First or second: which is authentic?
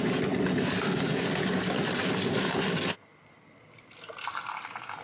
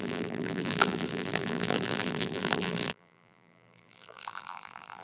first